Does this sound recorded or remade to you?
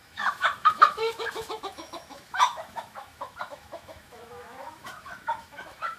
remade